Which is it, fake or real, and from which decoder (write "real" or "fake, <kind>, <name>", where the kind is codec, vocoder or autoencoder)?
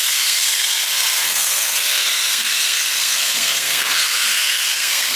fake, codec, SNAC